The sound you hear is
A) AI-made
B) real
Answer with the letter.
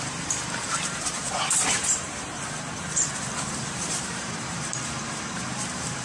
A